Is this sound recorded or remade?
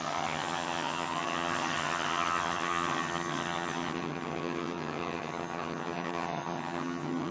remade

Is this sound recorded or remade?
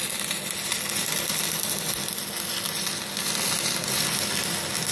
recorded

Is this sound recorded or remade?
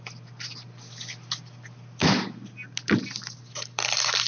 recorded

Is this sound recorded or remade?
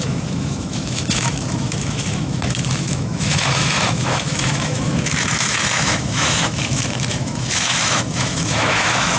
remade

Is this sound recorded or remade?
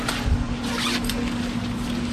recorded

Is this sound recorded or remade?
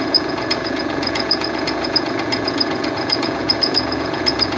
remade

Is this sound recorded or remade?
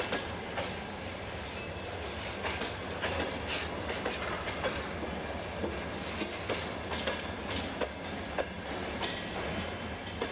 recorded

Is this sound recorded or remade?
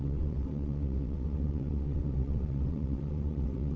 remade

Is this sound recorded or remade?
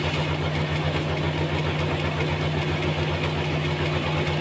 recorded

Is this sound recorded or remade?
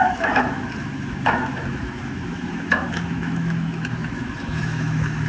remade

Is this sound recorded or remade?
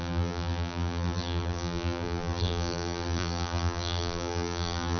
remade